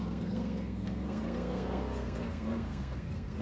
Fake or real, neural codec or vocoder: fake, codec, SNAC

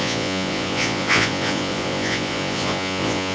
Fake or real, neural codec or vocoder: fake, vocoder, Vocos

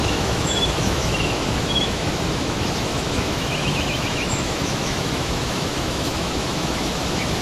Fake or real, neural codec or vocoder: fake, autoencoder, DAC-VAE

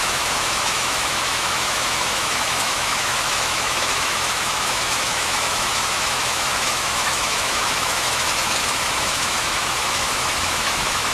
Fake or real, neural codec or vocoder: fake, autoencoder, DAC-VAE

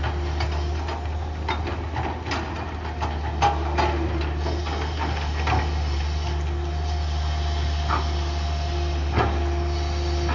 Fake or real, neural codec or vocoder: real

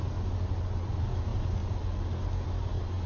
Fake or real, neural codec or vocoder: real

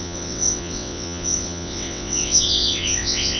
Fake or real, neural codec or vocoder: fake, vocoder, WaveNeXt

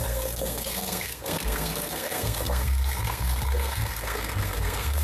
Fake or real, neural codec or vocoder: fake, codec, SNAC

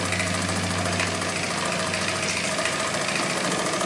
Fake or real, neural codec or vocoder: real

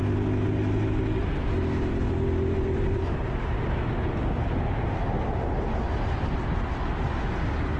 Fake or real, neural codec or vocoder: real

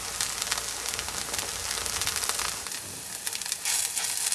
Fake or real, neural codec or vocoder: real